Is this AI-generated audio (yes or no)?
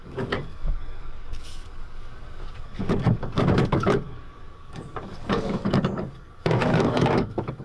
yes